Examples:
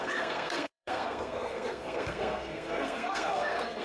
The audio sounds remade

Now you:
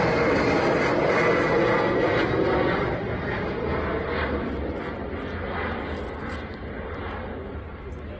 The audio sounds recorded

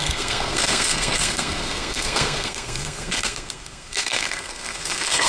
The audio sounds remade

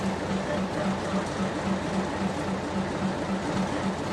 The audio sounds recorded